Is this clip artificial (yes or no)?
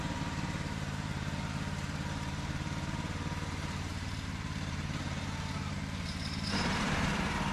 yes